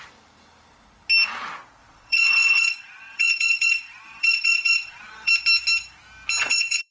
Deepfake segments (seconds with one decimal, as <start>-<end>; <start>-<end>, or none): 1.8-5.3; 6.4-6.9